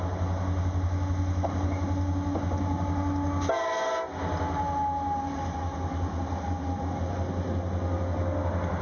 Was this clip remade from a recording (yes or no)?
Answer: no